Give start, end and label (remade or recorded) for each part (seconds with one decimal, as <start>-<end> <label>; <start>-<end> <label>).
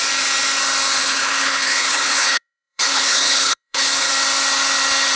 0.0-1.0 recorded; 1.0-4.1 remade; 4.1-5.2 recorded